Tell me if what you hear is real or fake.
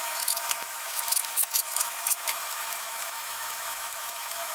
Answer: fake